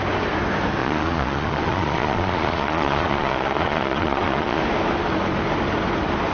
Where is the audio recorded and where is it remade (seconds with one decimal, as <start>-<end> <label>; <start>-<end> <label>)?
0.0-0.8 recorded; 0.8-4.6 remade; 4.6-6.3 recorded